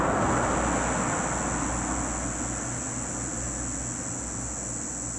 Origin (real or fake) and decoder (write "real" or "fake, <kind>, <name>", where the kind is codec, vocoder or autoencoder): real